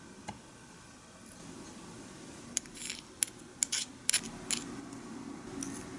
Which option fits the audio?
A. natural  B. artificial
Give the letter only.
A